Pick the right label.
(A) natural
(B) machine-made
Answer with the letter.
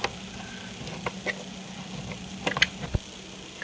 A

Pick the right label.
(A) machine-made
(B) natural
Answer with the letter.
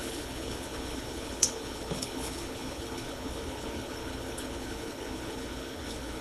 A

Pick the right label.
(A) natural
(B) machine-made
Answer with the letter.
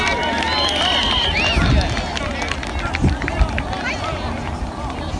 A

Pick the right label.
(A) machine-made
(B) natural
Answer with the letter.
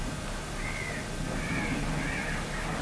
B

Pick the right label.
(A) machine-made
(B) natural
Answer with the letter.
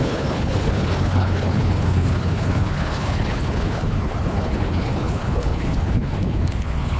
A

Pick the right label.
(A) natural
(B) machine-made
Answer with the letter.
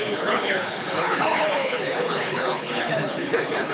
B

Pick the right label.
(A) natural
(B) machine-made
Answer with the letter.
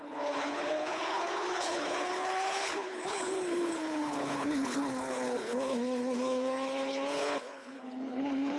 B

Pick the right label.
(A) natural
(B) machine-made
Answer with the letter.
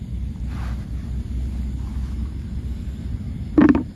A